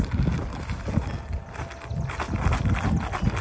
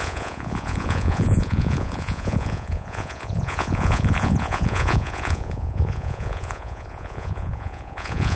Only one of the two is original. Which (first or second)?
first